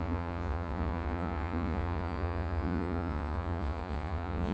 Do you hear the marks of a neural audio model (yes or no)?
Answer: yes